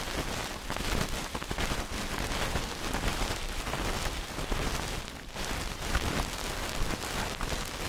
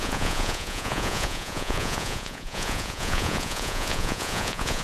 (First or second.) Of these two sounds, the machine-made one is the second